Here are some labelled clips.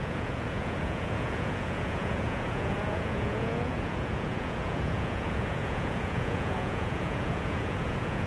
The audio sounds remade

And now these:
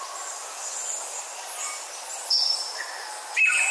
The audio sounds recorded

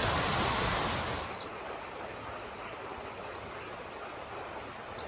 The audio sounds recorded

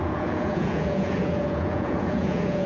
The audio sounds remade